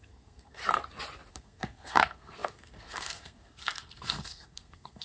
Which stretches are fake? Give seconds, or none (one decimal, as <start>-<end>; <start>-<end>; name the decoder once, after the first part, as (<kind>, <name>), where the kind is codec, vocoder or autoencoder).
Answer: 0.0-0.6 (codec, SNAC); 1.3-5.0